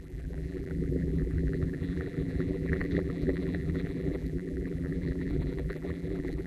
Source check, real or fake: fake